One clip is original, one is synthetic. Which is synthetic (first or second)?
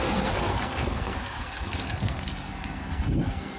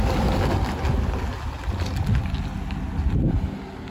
first